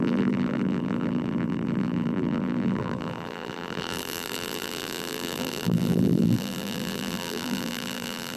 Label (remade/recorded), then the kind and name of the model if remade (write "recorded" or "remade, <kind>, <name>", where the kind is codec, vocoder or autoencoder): remade, vocoder, BigVGAN v2